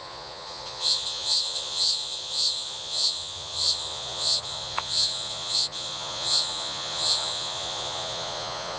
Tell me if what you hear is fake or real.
fake